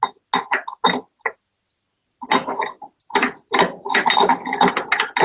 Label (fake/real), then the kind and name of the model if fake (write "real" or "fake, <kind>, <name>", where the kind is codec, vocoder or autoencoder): real